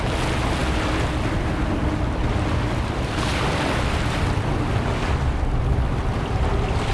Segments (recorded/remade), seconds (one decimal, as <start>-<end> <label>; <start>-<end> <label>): 0.0-6.9 recorded